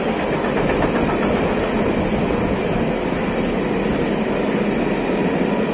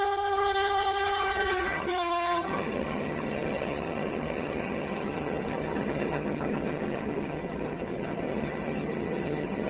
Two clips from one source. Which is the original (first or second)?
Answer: first